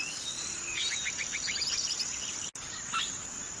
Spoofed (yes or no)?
no